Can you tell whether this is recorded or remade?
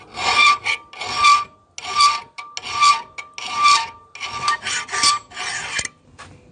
recorded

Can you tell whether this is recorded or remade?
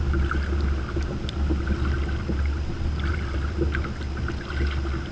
recorded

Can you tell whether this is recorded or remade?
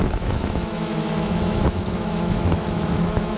remade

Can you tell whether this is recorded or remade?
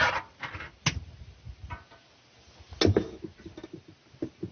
recorded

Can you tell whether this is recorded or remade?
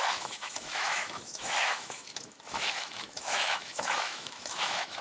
remade